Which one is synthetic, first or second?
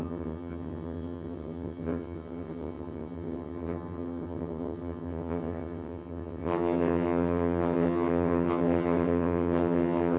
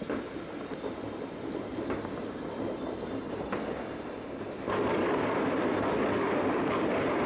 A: first